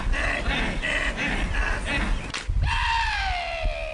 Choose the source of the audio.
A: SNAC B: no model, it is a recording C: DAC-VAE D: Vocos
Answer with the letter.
B